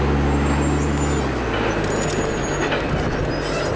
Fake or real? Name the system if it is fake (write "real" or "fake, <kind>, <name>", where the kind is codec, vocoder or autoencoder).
real